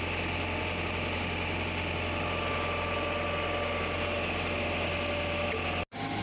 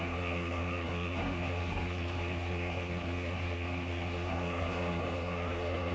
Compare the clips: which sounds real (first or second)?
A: first